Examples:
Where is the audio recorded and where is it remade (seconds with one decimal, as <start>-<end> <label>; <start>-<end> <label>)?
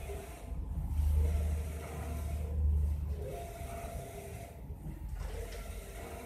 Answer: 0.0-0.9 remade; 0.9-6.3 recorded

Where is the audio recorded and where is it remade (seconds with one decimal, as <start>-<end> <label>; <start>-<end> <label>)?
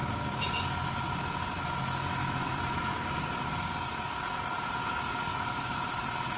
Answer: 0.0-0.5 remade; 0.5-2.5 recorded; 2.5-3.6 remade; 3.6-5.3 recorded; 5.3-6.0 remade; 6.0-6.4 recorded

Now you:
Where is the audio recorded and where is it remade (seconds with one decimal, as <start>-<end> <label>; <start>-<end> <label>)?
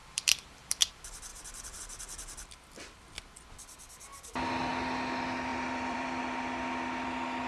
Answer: 0.0-0.9 remade; 0.9-1.3 recorded; 1.3-1.8 remade; 1.8-5.5 recorded; 5.5-6.2 remade; 6.2-7.5 recorded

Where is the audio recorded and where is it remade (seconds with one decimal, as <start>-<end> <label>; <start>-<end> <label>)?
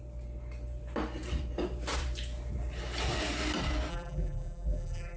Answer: 0.0-3.9 recorded; 3.9-5.2 remade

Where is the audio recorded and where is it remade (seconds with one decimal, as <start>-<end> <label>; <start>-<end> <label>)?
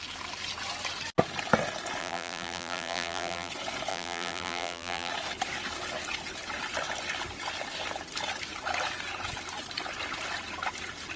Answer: 0.0-2.0 recorded; 2.0-3.5 remade; 3.5-3.9 recorded; 3.9-5.1 remade; 5.1-11.2 recorded